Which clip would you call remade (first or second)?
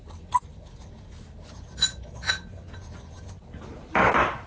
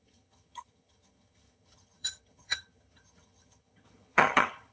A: second